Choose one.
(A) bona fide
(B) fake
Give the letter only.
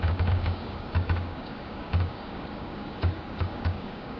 B